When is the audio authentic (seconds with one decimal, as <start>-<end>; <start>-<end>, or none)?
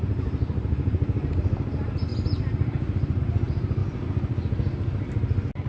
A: 2.1-3.2; 3.8-5.7